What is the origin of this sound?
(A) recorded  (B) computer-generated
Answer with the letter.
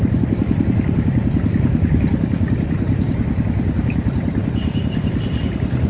B